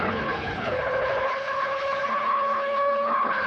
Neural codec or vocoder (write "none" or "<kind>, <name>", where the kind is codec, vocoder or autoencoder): codec, HILCodec